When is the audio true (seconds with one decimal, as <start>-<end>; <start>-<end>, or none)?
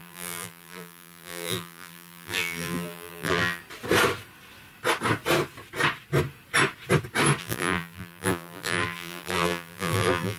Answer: 3.6-7.4